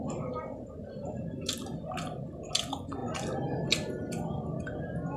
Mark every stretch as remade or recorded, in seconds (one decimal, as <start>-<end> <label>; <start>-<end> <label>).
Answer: 0.0-5.2 recorded